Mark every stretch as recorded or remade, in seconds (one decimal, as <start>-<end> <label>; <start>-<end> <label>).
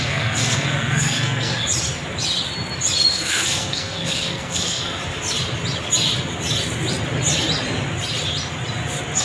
0.0-1.5 remade; 1.5-3.1 recorded; 3.1-5.0 remade; 5.0-9.2 recorded